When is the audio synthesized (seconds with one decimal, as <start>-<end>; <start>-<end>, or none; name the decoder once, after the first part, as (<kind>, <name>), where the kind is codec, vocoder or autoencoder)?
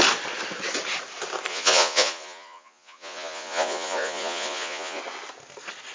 1.5-5.0 (vocoder, Vocos)